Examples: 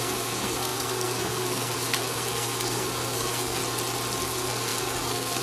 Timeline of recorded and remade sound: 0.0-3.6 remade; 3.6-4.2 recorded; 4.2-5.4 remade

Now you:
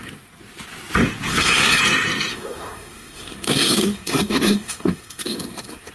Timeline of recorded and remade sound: 0.0-1.3 recorded; 1.3-1.8 remade; 1.8-2.3 recorded; 2.3-5.9 remade

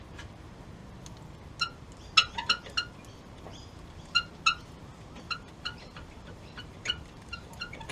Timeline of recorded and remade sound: 0.0-0.8 remade; 0.8-5.3 recorded; 5.3-7.9 remade

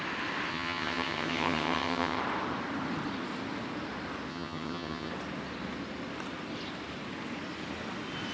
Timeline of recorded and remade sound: 0.0-0.5 recorded; 0.5-2.2 remade; 2.2-4.3 recorded; 4.3-5.1 remade; 5.1-8.3 recorded